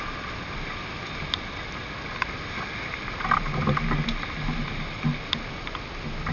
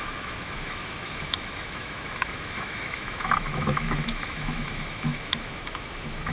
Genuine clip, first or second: first